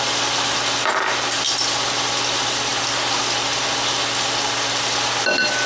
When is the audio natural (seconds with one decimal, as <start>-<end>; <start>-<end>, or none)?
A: 0.0-5.7